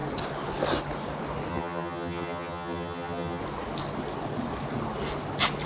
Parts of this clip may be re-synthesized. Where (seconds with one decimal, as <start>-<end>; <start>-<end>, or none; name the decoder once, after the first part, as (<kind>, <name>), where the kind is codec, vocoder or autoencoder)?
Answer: 1.5-3.4 (vocoder, HiFi-GAN)